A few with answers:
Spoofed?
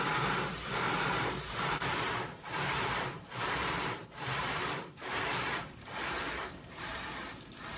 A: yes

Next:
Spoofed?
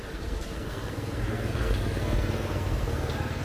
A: yes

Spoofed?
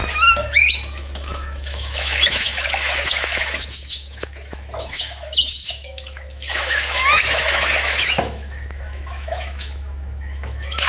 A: yes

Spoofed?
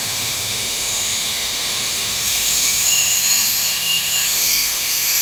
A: yes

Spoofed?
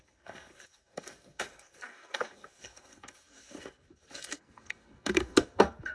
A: yes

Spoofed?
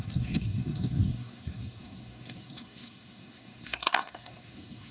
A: yes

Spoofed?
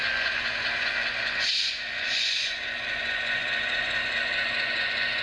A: yes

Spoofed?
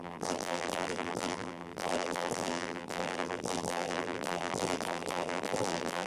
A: yes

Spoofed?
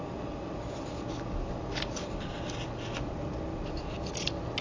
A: no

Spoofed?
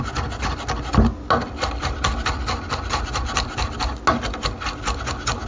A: no